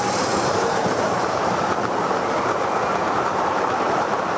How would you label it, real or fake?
fake